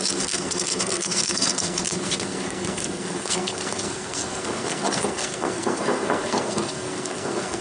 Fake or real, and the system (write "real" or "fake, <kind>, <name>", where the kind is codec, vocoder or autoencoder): fake, codec, SNAC